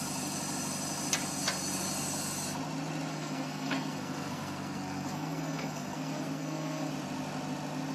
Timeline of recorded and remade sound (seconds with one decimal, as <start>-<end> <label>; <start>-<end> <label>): 0.0-3.1 recorded; 3.1-6.9 remade; 6.9-7.9 recorded